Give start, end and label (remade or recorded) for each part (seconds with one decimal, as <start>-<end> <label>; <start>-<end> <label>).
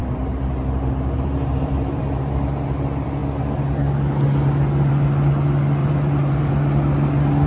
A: 0.0-2.0 remade; 2.0-5.8 recorded; 5.8-6.5 remade; 6.5-7.5 recorded